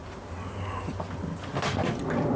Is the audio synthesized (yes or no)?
no